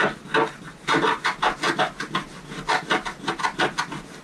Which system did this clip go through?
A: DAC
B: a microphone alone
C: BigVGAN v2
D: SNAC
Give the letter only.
B